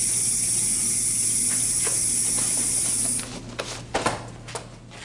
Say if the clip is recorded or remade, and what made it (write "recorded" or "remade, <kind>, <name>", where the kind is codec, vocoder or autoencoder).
recorded